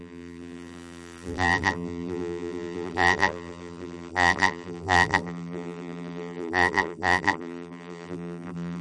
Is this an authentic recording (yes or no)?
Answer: no